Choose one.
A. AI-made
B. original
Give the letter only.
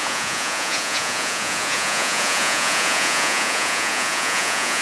A